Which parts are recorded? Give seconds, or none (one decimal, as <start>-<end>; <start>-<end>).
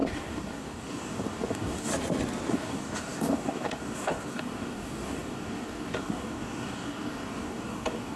1.9-2.5